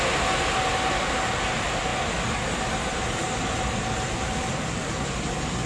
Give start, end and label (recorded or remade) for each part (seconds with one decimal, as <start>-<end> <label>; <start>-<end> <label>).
0.0-5.7 recorded